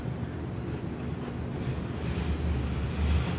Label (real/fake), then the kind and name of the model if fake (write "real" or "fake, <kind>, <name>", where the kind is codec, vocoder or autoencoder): real